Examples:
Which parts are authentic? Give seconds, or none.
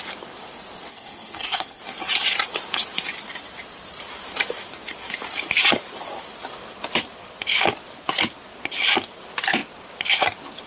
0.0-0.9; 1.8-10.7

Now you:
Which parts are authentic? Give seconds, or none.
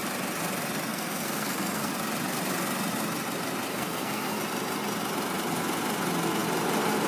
0.0-0.9; 1.9-3.7; 4.4-7.1